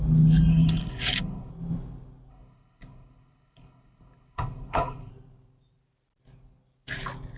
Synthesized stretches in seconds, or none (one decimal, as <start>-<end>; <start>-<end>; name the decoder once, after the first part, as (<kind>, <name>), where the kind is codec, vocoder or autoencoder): 0.5-1.5 (codec, HILCodec); 2.3-5.1